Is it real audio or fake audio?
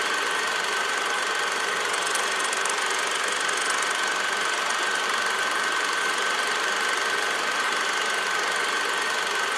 real